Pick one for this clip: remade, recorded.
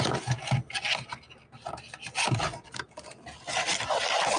recorded